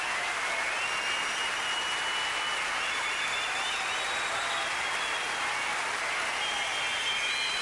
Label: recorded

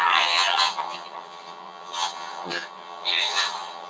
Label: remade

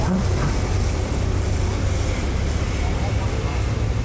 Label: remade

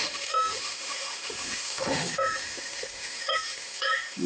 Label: remade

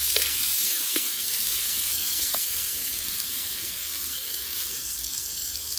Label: remade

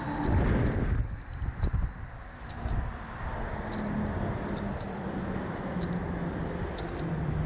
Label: recorded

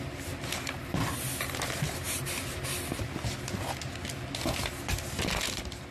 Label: recorded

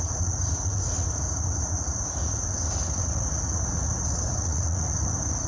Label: remade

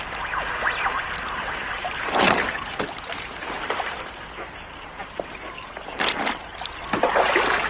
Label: remade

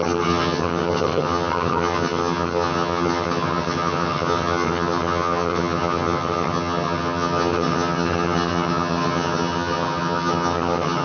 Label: remade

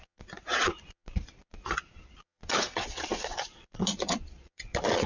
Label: remade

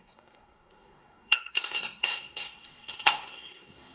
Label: remade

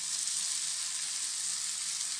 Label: recorded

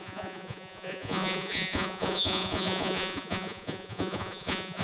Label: remade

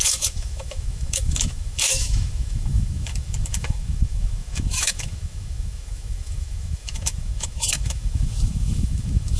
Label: remade